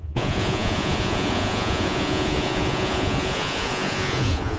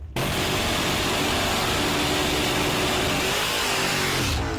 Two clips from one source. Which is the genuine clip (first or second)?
second